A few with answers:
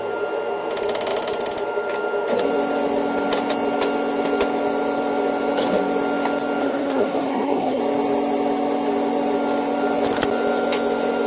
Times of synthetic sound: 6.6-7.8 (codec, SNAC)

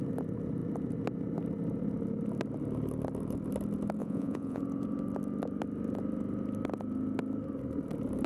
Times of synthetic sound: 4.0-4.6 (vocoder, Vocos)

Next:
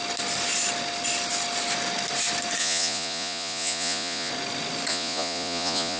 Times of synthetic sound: 2.6-4.3 (vocoder, Vocos); 4.9-6.0

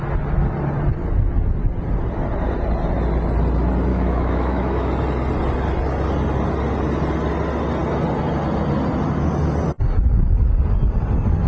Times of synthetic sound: 3.9-4.9 (autoencoder, DAC-VAE)